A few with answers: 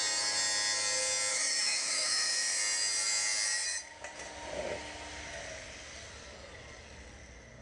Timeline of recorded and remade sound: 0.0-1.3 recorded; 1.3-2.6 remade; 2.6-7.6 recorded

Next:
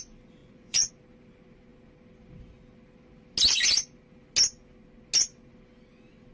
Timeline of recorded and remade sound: 0.0-0.4 recorded; 0.4-0.9 remade; 0.9-6.3 recorded

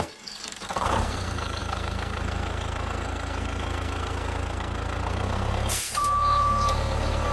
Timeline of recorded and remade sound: 0.0-7.3 remade